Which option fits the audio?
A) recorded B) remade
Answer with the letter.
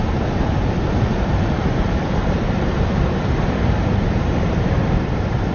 B